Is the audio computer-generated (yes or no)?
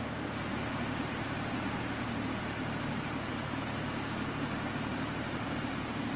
yes